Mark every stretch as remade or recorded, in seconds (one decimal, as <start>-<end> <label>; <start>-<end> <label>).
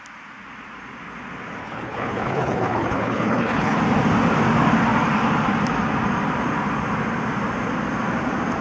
0.0-1.6 recorded; 1.6-3.8 remade; 3.8-8.6 recorded